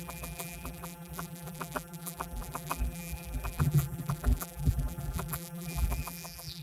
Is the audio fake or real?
fake